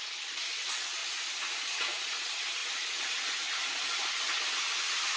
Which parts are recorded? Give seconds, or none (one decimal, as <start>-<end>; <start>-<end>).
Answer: none